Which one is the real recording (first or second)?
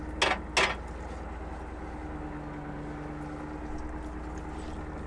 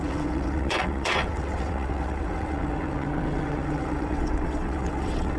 first